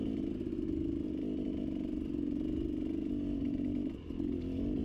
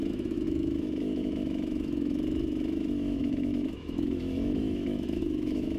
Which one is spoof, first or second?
second